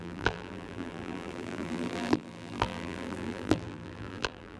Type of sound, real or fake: fake